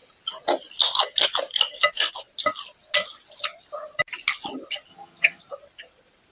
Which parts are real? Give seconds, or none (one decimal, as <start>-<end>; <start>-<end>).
0.0-4.9; 5.4-6.3